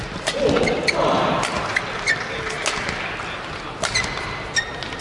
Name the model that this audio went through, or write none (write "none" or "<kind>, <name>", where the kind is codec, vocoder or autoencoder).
none